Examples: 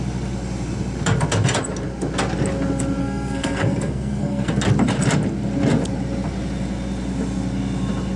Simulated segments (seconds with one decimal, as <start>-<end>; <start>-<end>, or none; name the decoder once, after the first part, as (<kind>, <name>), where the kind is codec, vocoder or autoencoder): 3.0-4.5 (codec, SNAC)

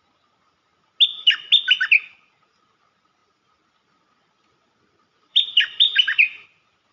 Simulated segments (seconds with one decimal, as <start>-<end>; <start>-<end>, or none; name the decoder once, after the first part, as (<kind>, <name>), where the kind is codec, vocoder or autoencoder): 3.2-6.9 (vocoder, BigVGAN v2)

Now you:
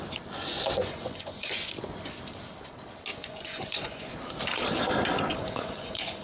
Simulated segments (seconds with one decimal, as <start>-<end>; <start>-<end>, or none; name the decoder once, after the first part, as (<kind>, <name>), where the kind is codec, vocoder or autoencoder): 0.4-1.7 (vocoder, Vocos); 3.1-4.1; 5.3-6.2